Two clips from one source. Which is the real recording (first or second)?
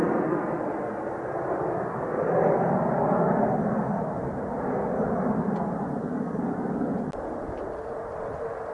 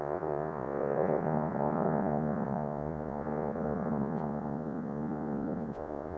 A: first